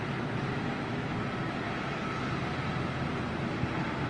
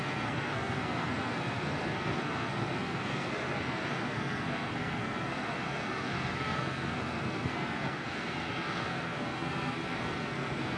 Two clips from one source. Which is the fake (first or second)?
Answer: second